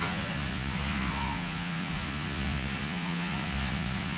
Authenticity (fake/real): fake